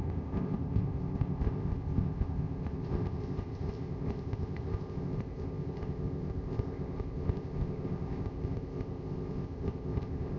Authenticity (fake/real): fake